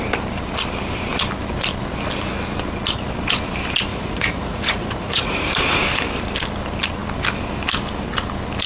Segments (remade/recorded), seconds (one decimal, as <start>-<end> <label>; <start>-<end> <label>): 0.0-3.9 recorded; 3.9-5.5 remade; 5.5-8.7 recorded